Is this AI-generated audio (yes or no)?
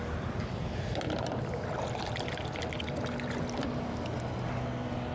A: no